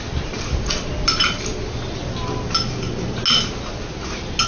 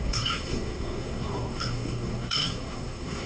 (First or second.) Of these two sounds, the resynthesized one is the second